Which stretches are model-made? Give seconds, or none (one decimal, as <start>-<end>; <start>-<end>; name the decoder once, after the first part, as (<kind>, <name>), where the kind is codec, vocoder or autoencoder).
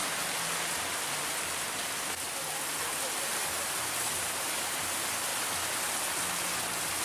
4.2-5.3 (vocoder, BigVGAN v2)